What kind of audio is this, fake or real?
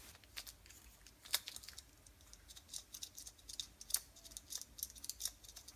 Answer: real